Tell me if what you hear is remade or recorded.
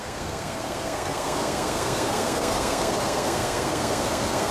remade